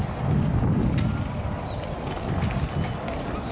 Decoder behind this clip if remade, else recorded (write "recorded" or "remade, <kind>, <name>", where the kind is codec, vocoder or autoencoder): recorded